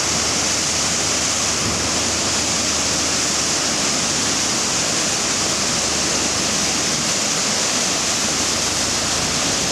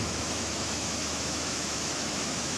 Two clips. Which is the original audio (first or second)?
first